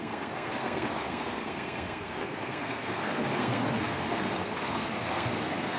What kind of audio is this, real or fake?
fake